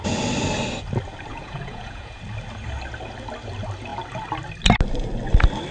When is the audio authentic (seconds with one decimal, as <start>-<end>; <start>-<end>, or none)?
0.0-1.3; 2.2-5.7